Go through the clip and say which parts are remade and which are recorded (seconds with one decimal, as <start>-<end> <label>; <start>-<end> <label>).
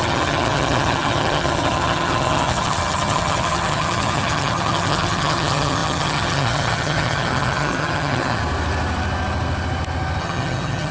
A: 0.0-8.4 remade; 8.4-10.2 recorded; 10.2-10.9 remade